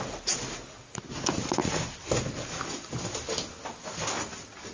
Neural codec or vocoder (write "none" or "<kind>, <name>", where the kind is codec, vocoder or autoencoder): none